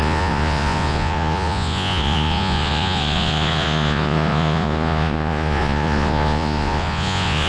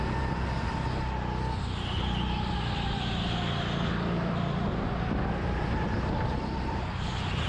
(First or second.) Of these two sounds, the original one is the second